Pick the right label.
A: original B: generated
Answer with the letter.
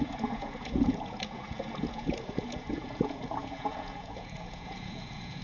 B